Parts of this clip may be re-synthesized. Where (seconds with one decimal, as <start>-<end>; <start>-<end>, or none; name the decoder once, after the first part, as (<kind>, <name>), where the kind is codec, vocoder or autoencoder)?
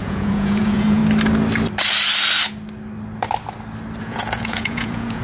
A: 0.0-1.0 (vocoder, Vocos); 4.0-5.2